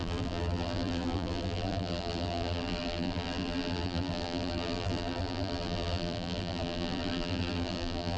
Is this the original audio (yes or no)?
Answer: no